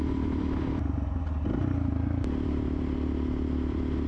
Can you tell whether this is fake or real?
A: real